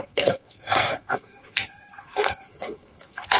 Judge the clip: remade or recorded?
remade